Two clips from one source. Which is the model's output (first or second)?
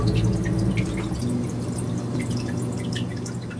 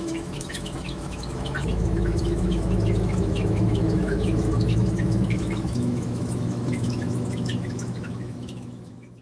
second